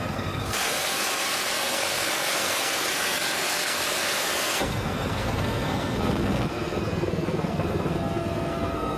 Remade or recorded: remade